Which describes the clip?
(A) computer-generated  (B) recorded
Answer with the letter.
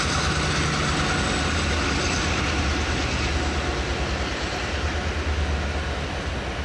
B